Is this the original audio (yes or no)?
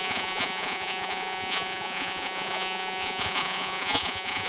no